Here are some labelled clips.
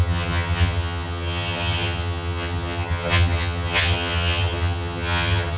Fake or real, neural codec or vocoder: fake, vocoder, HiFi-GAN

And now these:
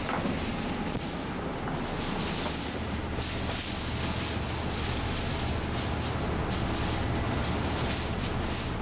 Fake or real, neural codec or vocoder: real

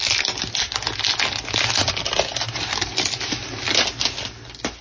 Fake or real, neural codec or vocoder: real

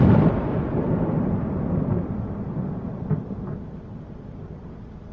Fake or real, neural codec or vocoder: fake, vocoder, BigVGAN v2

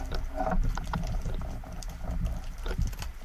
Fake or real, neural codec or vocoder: real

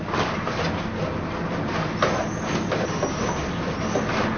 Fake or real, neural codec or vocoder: real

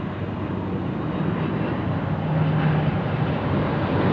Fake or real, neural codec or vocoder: real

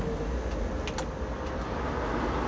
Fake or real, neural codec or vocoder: real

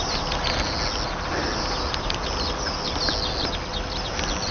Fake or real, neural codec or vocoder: real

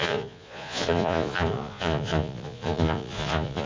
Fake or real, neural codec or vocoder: fake, vocoder, Vocos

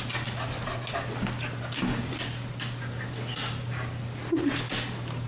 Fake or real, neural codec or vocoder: real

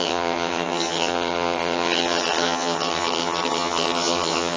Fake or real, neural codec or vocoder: fake, vocoder, HiFi-GAN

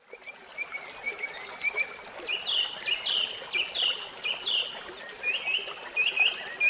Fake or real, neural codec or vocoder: real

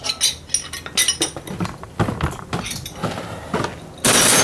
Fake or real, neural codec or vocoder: real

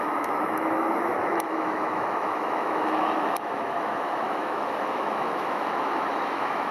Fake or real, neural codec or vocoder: fake, autoencoder, DAC-VAE